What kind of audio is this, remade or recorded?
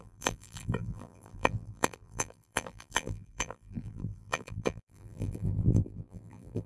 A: remade